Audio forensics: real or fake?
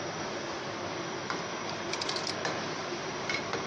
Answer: real